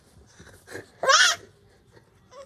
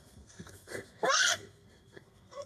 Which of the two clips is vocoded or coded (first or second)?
second